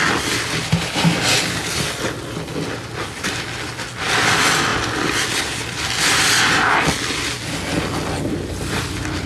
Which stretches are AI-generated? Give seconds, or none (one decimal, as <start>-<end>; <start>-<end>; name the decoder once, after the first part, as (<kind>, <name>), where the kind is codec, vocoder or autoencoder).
none

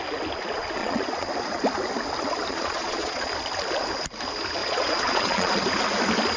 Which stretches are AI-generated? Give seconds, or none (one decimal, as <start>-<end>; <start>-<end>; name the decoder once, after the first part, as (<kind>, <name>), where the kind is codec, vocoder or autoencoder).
0.8-1.3 (vocoder, Vocos); 2.5-3.3; 4.6-5.5